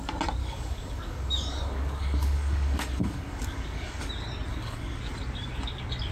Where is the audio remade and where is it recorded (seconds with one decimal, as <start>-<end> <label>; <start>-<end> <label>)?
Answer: 0.0-0.4 recorded; 0.4-4.1 remade; 4.1-4.5 recorded; 4.5-5.0 remade; 5.0-6.1 recorded